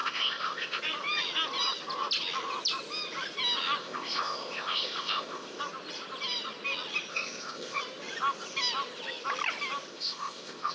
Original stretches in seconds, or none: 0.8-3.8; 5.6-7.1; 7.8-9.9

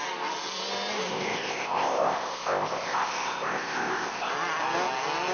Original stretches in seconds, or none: 0.0-1.1; 4.3-5.3

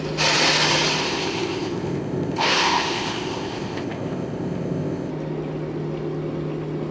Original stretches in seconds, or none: 0.0-1.0; 5.1-6.9

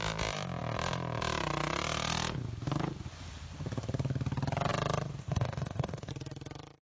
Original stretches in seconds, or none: 0.0-5.2; 6.1-6.9

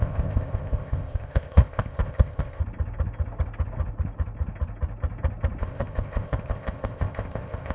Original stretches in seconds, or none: 2.6-5.6

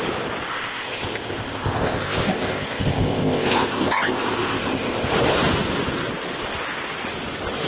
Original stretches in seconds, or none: 0.0-0.5; 5.1-7.7